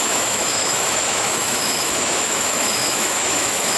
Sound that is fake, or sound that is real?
fake